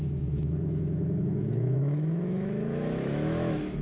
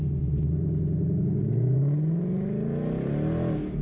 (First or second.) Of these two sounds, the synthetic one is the first